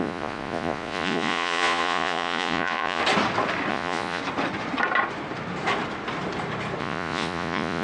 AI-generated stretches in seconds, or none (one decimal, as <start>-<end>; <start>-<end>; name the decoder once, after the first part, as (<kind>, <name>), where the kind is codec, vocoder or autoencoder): 0.0-3.0 (vocoder, Vocos); 3.7-4.2; 6.8-7.8